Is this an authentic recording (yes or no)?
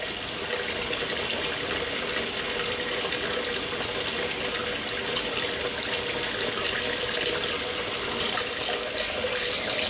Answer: yes